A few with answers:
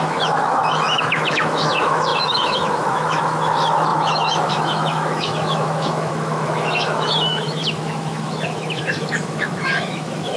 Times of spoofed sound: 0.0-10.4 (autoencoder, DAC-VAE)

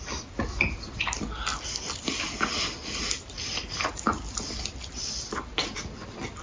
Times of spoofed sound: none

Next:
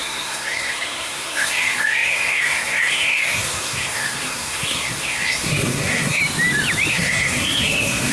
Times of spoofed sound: 0.0-6.2 (codec, SNAC); 6.9-8.1

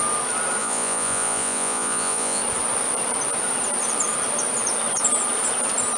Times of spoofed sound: 0.6-2.4 (vocoder, Vocos)